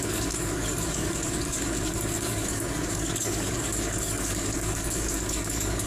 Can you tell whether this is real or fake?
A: fake